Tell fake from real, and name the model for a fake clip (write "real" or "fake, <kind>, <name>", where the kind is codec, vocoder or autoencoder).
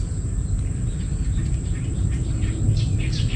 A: real